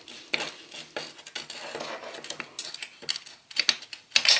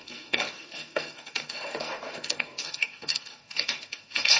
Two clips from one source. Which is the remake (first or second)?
second